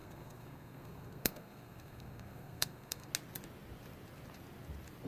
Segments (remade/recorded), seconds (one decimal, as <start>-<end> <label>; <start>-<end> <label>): 0.0-3.1 remade; 3.1-5.1 recorded